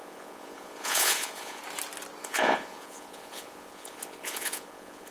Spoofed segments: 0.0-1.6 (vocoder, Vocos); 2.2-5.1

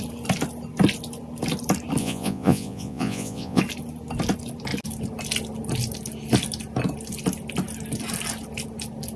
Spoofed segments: 2.0-3.6 (vocoder, Vocos)

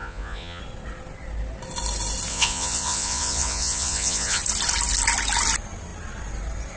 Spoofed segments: 0.0-0.6 (vocoder, Vocos); 2.3-4.4